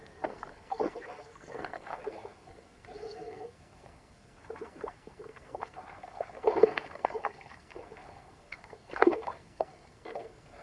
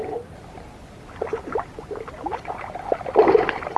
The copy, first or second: first